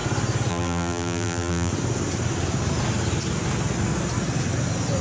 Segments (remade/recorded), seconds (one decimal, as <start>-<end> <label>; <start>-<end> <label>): 0.0-0.5 recorded; 0.5-1.7 remade; 1.7-5.0 recorded